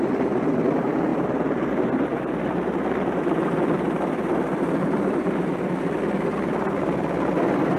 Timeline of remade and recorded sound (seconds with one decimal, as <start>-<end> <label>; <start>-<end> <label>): 0.0-7.8 recorded